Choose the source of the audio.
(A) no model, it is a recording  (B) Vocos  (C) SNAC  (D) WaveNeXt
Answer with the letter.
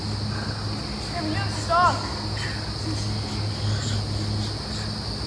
A